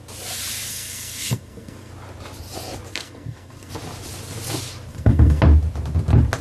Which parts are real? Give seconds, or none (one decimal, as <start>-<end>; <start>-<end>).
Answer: 0.0-0.7; 1.9-2.9; 3.7-4.9; 5.4-6.4